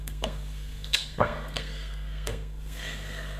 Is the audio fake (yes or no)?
yes